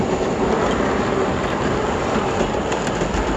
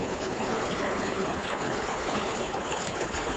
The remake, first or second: second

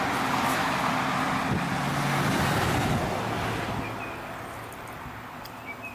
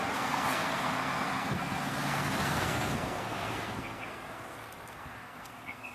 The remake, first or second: second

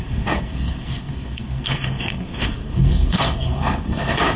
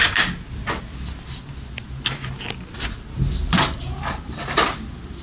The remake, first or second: first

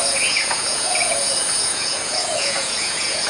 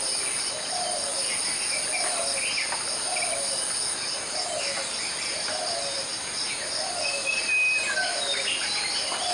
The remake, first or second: first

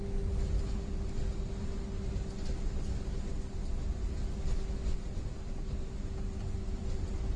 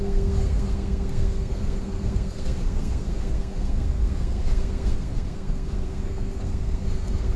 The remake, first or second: second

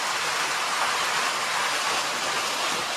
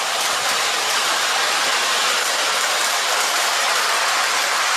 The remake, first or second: second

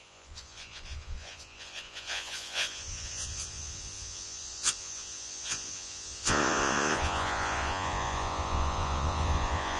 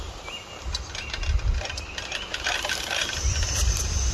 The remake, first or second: first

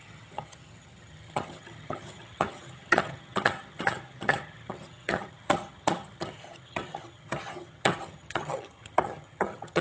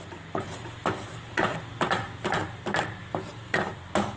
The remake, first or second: first